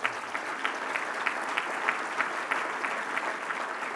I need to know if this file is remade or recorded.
recorded